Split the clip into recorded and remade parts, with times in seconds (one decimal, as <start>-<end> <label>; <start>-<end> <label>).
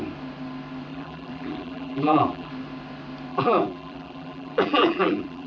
0.0-0.9 recorded; 0.9-2.5 remade; 2.5-3.3 recorded; 3.3-5.5 remade